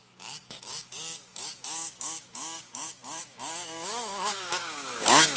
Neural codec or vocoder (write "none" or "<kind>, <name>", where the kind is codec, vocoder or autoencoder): codec, DAC